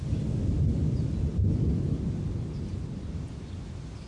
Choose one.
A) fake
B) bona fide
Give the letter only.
B